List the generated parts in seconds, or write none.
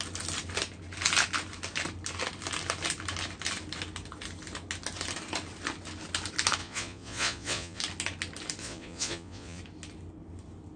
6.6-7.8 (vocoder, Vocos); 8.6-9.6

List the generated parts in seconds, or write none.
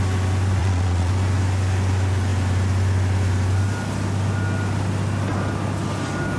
0.6-1.1 (vocoder, Vocos)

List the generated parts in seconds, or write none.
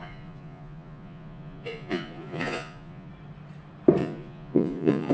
0.0-3.1 (vocoder, Vocos); 4.0-5.1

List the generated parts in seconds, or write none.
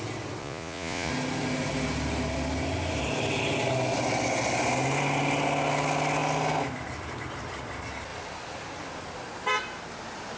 0.4-1.1 (vocoder, Vocos)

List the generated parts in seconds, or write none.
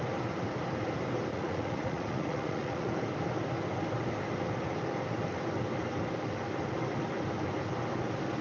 1.3-2.9 (vocoder, Vocos)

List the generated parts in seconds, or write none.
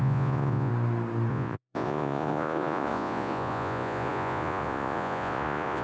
0.0-0.7 (vocoder, Vocos); 1.3-5.8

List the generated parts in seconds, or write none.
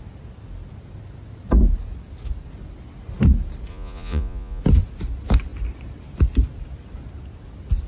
3.7-4.6 (vocoder, Vocos)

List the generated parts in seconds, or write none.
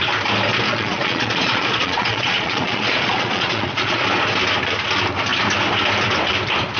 0.7-4.0 (vocoder, Vocos)